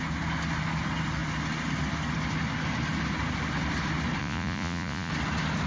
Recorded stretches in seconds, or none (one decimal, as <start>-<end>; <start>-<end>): 0.0-4.2; 5.1-5.7